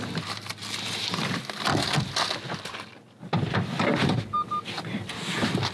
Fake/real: real